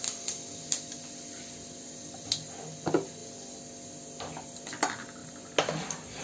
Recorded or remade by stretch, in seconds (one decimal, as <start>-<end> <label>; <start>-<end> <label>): 0.0-6.2 recorded